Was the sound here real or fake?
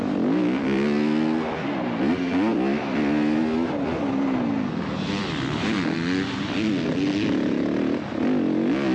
real